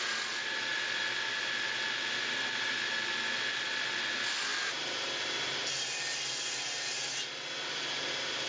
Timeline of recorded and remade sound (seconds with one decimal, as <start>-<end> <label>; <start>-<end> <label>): 0.0-8.5 recorded